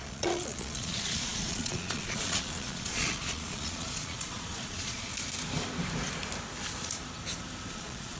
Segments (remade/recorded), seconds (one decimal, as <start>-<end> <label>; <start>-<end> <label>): 0.0-5.1 remade; 5.1-7.7 recorded; 7.7-8.2 remade